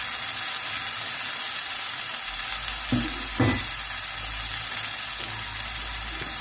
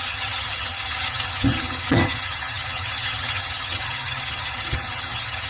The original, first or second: first